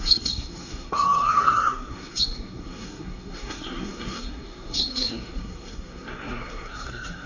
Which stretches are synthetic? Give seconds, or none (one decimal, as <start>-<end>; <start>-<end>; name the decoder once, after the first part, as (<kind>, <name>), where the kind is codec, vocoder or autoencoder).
0.0-7.3 (codec, SNAC)